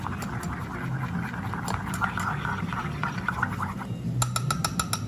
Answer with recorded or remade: recorded